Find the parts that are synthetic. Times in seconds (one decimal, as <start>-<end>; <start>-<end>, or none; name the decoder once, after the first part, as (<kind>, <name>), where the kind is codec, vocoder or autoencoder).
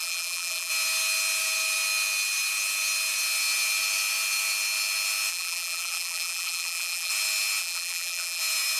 0.0-0.7 (vocoder, BigVGAN v2); 5.3-7.1; 7.6-8.4